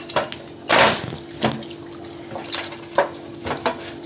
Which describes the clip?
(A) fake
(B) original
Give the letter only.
B